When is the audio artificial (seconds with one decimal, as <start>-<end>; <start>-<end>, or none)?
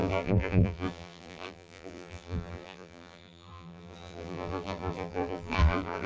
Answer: 0.0-6.1